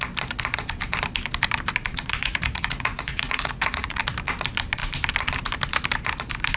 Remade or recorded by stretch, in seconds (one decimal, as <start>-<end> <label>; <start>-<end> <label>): 0.0-1.9 recorded; 1.9-4.0 remade; 4.0-6.6 recorded